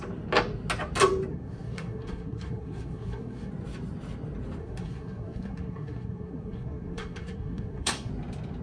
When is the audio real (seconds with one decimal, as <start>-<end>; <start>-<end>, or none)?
0.0-1.3; 3.5-4.6; 8.1-8.6